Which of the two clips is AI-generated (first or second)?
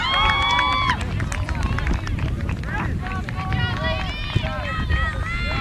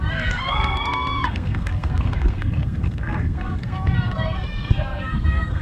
second